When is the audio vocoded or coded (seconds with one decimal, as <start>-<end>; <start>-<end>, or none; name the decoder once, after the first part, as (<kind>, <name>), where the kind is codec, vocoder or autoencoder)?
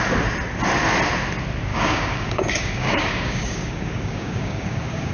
1.7-5.1 (codec, DAC)